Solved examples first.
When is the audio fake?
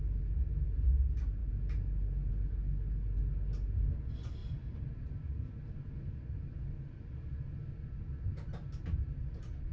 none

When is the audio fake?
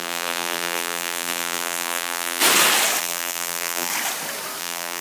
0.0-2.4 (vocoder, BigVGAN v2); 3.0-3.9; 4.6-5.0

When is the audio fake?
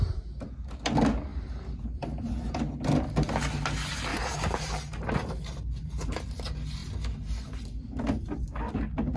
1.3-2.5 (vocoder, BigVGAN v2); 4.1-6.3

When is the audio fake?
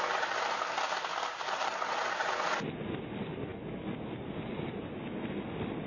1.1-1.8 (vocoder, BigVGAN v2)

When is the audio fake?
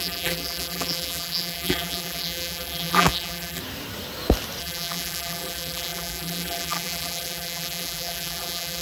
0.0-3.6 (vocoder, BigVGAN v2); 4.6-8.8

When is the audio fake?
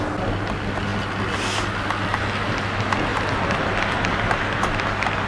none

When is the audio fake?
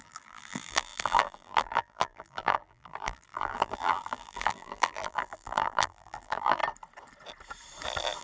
0.0-6.6 (vocoder, BigVGAN v2)